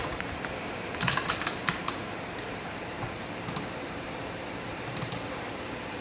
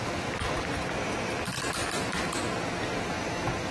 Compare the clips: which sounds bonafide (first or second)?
second